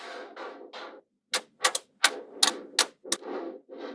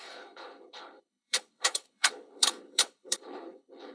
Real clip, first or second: first